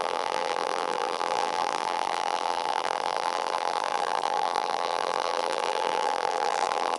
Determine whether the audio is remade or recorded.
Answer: remade